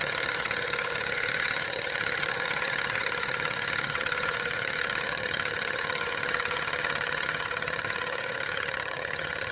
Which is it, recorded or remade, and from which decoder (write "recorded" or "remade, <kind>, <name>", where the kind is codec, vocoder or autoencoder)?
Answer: remade, vocoder, HiFi-GAN